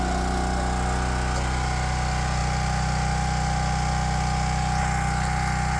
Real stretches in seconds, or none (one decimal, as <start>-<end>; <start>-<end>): 0.0-5.8